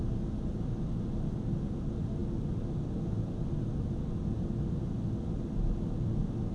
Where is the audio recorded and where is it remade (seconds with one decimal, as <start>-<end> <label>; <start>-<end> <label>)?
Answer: 0.0-6.5 recorded